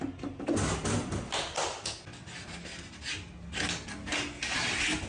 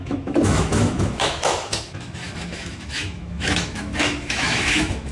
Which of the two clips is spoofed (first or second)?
second